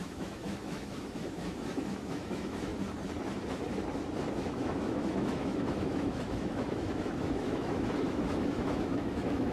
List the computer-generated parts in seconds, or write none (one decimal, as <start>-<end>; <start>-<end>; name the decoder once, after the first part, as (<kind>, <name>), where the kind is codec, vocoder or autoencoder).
0.0-2.7 (autoencoder, DAC-VAE); 4.3-9.5